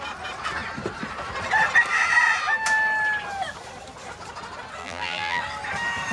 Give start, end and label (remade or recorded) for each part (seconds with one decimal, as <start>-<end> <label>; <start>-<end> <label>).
0.0-4.8 recorded; 4.8-5.4 remade; 5.4-6.1 recorded